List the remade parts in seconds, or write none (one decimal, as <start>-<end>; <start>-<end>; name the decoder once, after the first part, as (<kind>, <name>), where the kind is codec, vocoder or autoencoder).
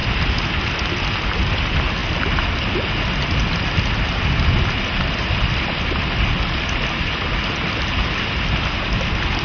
none